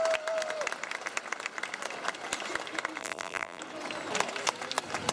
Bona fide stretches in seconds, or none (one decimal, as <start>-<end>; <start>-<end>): 0.0-3.0; 3.6-5.1